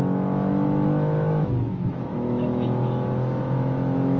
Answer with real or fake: fake